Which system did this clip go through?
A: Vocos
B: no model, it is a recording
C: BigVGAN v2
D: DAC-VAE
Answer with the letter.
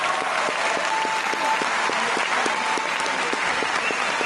B